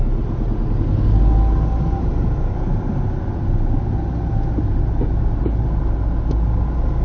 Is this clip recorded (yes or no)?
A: yes